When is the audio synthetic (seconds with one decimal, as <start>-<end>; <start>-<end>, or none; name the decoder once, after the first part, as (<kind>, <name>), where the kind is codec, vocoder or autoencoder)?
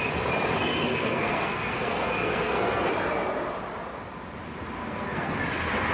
0.9-2.9 (codec, SNAC); 4.8-5.4